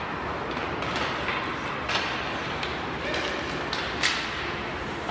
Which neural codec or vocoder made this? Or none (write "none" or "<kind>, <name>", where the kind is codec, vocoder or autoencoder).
none